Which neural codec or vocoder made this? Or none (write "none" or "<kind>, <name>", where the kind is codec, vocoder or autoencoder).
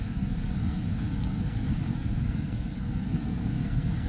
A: codec, SNAC